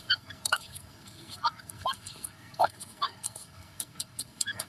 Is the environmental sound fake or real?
fake